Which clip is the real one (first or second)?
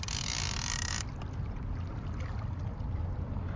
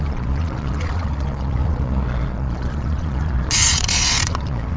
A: first